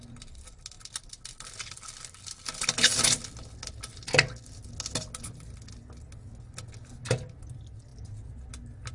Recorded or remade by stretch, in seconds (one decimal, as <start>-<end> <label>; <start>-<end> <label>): 0.0-8.9 recorded